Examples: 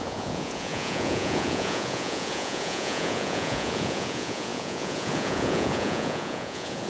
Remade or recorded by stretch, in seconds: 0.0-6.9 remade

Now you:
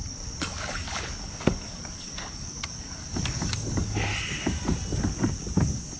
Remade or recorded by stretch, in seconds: 0.0-4.1 remade; 4.1-5.6 recorded; 5.6-6.0 remade

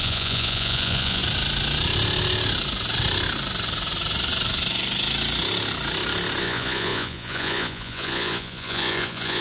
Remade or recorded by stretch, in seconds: 0.0-1.2 remade; 1.2-6.4 recorded; 6.4-9.4 remade

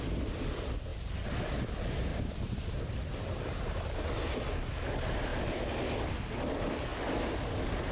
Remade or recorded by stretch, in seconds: 0.0-2.1 recorded; 2.1-4.1 remade; 4.1-5.3 recorded; 5.3-5.8 remade; 5.8-7.9 recorded

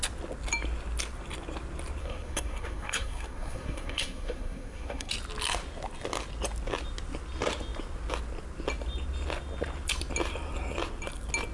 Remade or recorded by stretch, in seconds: 0.0-2.0 recorded; 2.0-5.1 remade; 5.1-11.5 recorded

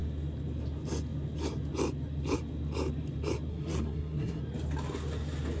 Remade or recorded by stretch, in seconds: 0.0-3.5 recorded; 3.5-4.4 remade; 4.4-5.6 recorded